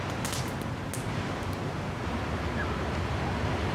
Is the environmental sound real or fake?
real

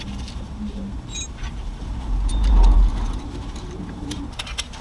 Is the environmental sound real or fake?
fake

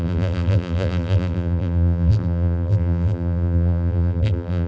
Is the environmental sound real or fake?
fake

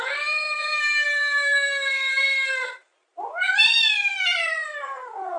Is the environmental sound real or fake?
fake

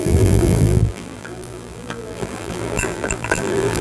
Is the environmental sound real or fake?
fake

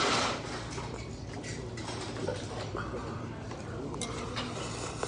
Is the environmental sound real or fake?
real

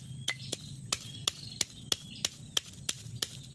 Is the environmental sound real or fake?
real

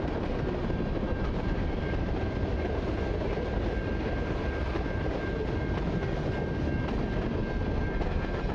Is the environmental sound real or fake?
real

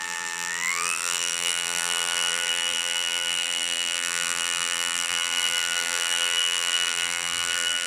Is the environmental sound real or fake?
fake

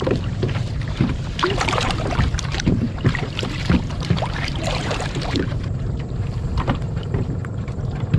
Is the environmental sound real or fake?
fake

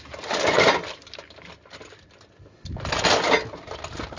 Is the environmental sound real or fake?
real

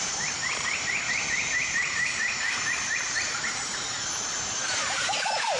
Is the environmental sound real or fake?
fake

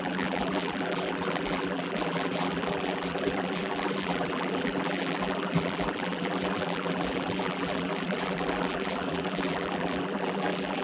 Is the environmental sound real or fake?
fake